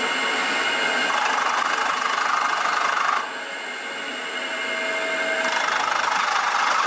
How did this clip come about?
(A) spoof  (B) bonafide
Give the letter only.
B